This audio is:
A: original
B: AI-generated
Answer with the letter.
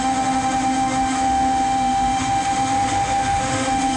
B